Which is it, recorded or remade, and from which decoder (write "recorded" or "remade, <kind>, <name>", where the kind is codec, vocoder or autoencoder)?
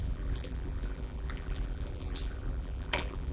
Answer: remade, vocoder, BigVGAN v2